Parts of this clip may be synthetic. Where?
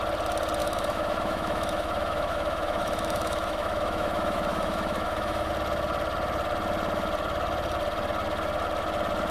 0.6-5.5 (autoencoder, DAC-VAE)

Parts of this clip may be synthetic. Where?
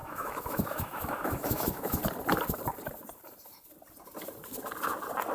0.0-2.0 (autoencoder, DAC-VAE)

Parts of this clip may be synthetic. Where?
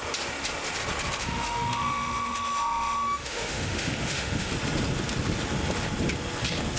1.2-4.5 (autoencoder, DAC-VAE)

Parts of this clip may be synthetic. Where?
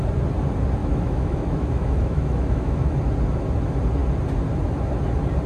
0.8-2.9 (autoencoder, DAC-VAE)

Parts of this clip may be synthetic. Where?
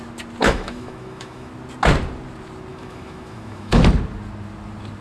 0.4-1.5 (autoencoder, DAC-VAE); 2.7-3.8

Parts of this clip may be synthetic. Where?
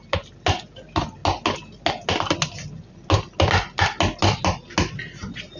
none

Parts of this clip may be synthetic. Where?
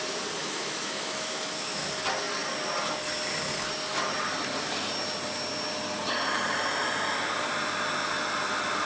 0.4-1.8 (autoencoder, DAC-VAE)